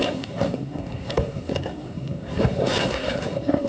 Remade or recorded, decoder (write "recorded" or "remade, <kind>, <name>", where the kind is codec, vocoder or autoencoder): remade, codec, SNAC